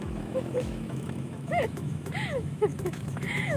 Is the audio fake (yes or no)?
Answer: yes